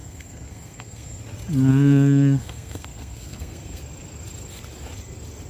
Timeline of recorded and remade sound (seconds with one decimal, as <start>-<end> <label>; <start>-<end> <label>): 0.0-1.2 remade; 1.2-1.7 recorded; 1.7-3.8 remade; 3.8-5.5 recorded